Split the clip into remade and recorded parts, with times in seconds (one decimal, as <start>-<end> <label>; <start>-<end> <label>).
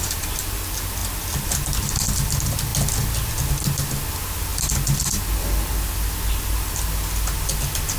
0.0-8.0 recorded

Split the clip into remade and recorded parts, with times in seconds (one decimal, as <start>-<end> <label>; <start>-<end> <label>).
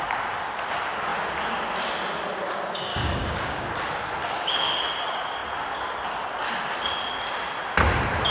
0.0-2.9 recorded; 2.9-3.7 remade; 3.7-4.2 recorded; 4.2-4.8 remade; 4.8-8.3 recorded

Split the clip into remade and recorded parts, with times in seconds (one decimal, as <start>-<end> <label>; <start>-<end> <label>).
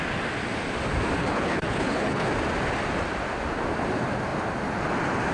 0.0-1.2 recorded; 1.2-2.3 remade; 2.3-5.3 recorded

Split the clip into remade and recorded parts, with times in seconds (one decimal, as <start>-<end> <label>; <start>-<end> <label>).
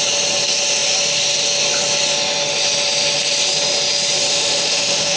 0.0-4.3 recorded; 4.3-5.2 remade